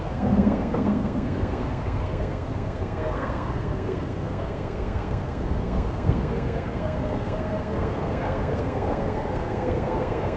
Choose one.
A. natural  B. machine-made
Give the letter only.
B